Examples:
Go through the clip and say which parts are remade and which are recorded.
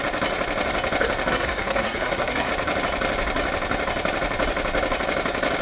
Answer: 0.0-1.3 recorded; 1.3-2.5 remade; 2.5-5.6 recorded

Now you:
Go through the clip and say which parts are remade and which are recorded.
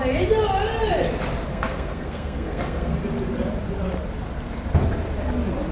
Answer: 0.0-1.5 recorded; 1.5-3.0 remade; 3.0-5.7 recorded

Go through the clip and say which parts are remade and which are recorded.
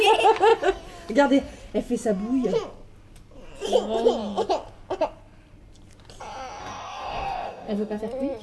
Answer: 0.0-6.6 recorded; 6.6-8.0 remade; 8.0-8.4 recorded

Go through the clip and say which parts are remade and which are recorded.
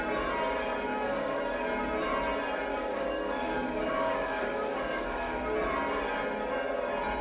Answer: 0.0-0.9 recorded; 0.9-1.4 remade; 1.4-2.7 recorded; 2.7-5.4 remade; 5.4-7.2 recorded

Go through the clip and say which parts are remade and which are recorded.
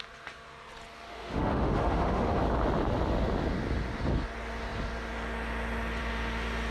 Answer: 0.0-1.1 recorded; 1.1-2.4 remade; 2.4-6.7 recorded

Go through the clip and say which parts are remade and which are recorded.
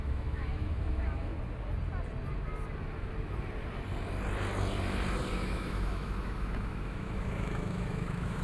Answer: 0.0-1.3 remade; 1.3-5.3 recorded; 5.3-8.4 remade